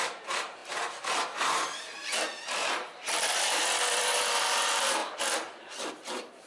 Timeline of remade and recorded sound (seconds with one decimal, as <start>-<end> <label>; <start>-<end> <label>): 0.0-5.0 remade; 5.0-5.9 recorded; 5.9-6.5 remade